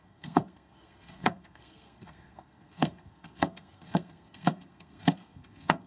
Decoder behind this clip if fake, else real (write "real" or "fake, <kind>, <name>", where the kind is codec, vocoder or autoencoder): fake, codec, SNAC